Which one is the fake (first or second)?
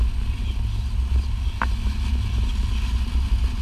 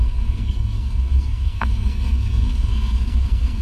second